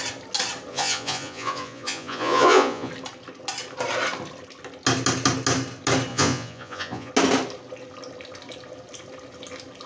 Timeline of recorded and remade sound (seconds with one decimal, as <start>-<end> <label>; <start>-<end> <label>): 0.0-0.7 recorded; 0.7-2.9 remade; 2.9-6.1 recorded; 6.1-7.1 remade; 7.1-9.9 recorded